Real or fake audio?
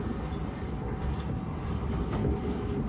real